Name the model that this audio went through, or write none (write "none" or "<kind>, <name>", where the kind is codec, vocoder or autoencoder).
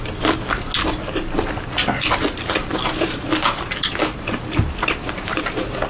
none